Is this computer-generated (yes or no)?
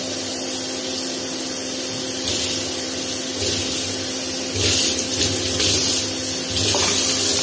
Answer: no